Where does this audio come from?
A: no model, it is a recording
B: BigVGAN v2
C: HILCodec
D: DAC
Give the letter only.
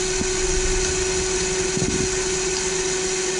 A